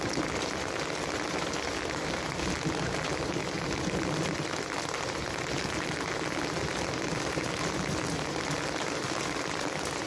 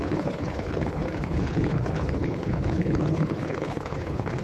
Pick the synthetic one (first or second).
second